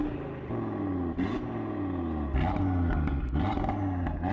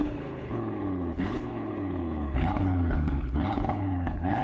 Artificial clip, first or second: second